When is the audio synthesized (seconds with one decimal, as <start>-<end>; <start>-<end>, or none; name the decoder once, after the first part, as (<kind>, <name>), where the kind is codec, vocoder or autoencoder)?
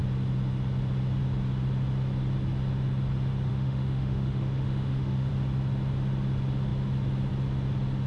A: 3.5-5.3 (autoencoder, DAC-VAE)